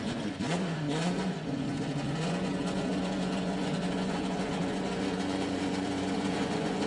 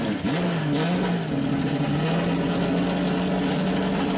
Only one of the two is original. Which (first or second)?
second